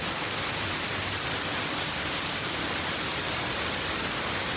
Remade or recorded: recorded